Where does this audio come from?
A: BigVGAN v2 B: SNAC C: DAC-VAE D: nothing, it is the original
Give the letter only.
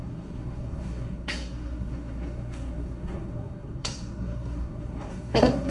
B